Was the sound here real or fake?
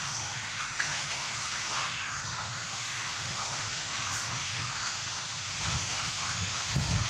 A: fake